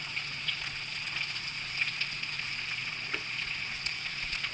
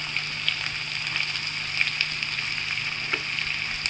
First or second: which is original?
second